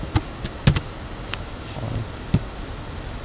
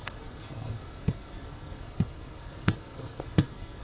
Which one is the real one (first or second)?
first